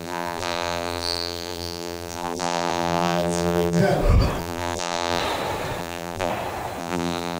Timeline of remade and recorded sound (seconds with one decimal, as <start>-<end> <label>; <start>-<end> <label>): 0.0-3.8 remade; 3.8-4.4 recorded; 4.4-5.2 remade; 5.2-5.8 recorded; 5.8-6.3 remade; 6.3-6.8 recorded; 6.8-7.4 remade